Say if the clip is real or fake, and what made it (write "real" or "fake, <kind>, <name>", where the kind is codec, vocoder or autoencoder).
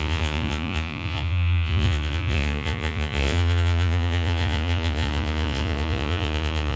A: fake, vocoder, Vocos